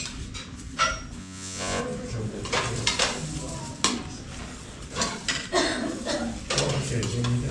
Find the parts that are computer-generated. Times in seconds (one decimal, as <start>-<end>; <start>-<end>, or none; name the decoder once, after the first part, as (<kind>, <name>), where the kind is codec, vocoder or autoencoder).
1.2-1.8 (vocoder, Vocos)